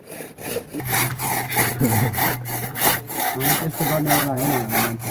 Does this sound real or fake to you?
fake